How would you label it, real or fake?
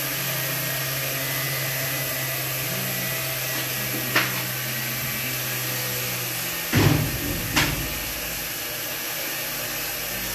real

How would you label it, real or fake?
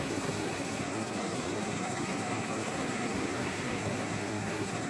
fake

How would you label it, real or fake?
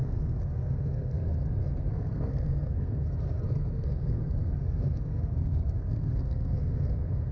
fake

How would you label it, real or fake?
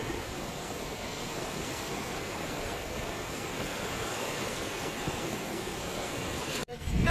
fake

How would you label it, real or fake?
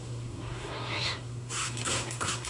fake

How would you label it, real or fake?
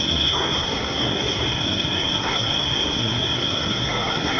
fake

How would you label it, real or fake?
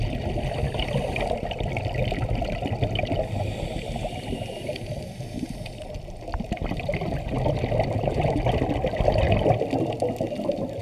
real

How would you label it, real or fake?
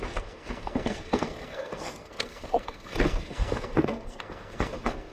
fake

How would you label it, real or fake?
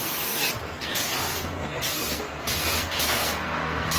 fake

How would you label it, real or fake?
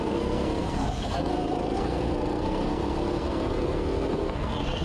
fake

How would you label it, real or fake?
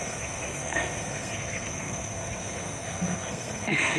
fake